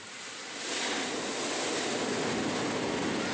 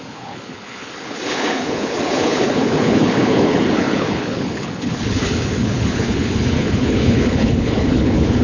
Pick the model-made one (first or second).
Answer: second